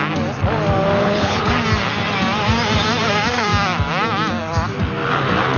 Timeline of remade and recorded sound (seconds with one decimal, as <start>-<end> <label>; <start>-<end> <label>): 0.0-1.0 recorded; 1.0-1.5 remade; 1.5-5.6 recorded